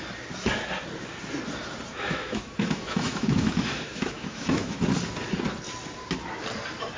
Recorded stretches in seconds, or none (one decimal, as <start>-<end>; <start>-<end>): 0.0-1.9; 4.8-7.0